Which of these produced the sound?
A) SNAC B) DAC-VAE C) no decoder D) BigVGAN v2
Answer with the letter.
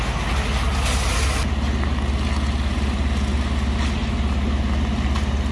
C